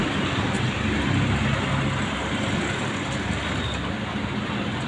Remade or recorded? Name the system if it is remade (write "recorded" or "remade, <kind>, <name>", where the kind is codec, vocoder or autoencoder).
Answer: recorded